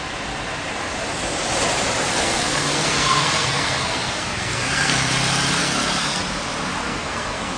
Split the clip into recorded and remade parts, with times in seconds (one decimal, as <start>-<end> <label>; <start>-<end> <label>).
0.0-2.1 recorded; 2.1-5.1 remade; 5.1-5.6 recorded; 5.6-6.2 remade; 6.2-6.8 recorded; 6.8-7.6 remade